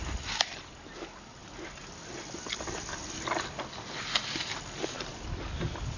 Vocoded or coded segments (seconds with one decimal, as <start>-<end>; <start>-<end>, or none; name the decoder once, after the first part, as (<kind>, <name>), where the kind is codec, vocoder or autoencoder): none